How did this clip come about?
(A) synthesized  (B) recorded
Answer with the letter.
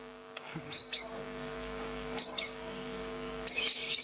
A